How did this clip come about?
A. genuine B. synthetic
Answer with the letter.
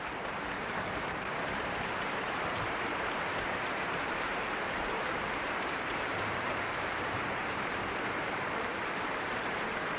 B